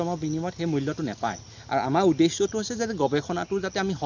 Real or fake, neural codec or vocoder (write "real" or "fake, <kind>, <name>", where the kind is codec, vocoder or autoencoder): real